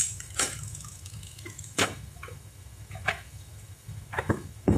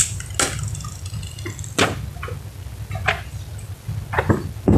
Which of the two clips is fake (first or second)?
first